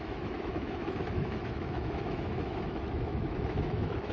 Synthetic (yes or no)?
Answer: yes